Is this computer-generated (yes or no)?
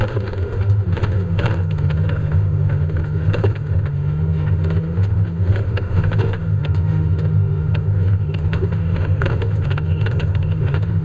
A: yes